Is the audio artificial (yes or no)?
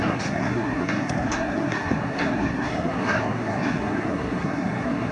yes